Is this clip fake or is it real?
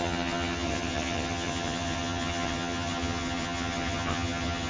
fake